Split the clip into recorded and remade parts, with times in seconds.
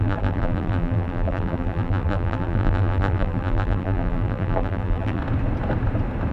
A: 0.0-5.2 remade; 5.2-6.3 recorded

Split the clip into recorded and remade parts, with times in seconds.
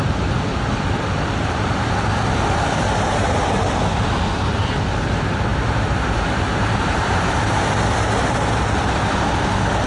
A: 0.0-5.5 recorded; 5.5-7.6 remade; 7.6-9.9 recorded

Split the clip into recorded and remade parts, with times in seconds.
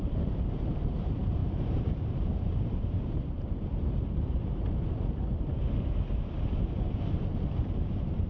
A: 0.0-8.3 remade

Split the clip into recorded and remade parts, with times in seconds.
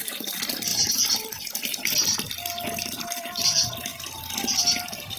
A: 0.0-5.2 recorded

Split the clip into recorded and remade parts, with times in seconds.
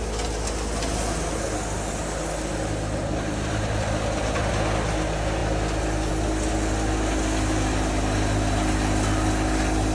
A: 0.0-3.0 recorded; 3.0-4.5 remade; 4.5-9.9 recorded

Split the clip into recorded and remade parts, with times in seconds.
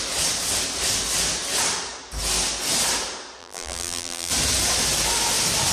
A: 0.0-3.4 recorded; 3.4-4.3 remade; 4.3-5.7 recorded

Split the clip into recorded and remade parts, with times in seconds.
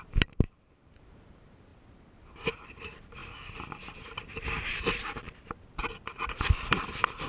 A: 0.0-1.7 remade; 1.7-2.5 recorded; 2.5-3.2 remade; 3.2-4.6 recorded; 4.6-5.8 remade; 5.8-6.8 recorded; 6.8-7.3 remade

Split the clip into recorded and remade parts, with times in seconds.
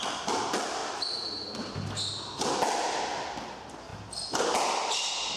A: 0.0-5.4 recorded